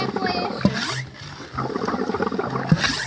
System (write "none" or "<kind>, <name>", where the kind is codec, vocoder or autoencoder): none